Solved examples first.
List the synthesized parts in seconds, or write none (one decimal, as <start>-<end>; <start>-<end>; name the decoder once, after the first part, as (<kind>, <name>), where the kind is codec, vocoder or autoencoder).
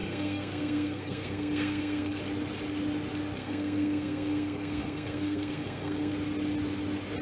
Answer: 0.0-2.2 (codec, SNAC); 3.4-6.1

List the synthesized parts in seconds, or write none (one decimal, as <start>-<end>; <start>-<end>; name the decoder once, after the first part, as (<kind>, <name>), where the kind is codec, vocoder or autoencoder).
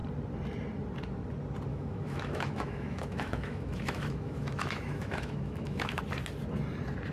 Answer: 1.7-6.0 (autoencoder, DAC-VAE)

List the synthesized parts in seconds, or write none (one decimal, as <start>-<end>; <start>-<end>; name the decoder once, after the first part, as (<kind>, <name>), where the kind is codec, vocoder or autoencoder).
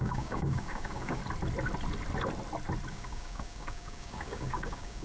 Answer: 0.0-1.2 (codec, DAC); 2.9-5.0